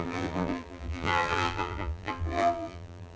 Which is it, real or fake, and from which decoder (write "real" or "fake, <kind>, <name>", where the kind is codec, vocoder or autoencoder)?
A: fake, vocoder, BigVGAN v2